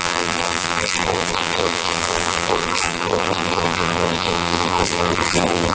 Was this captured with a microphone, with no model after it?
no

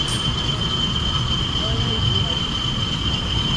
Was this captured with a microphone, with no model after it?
yes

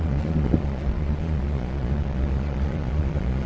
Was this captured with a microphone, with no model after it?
no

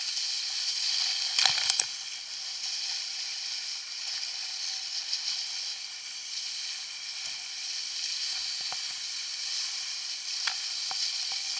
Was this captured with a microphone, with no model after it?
yes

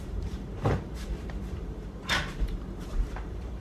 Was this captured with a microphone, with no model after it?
no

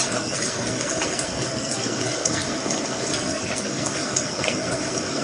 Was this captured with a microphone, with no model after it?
no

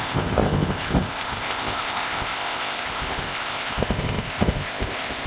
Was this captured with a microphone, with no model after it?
no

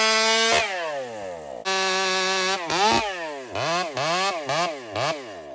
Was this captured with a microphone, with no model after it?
yes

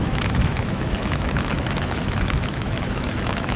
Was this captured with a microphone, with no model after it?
no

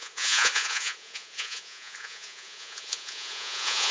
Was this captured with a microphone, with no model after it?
no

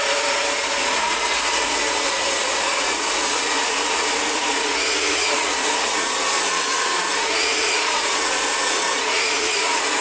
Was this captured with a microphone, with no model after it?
no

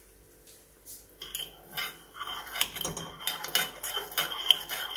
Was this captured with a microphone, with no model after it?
yes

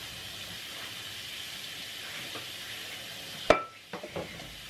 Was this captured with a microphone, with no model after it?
yes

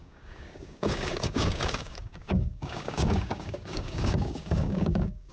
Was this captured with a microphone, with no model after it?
no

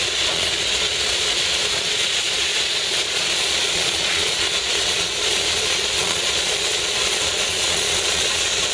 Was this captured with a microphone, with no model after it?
no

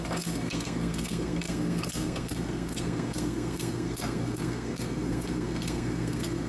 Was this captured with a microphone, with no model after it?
no